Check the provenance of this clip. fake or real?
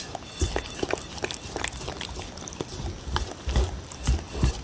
real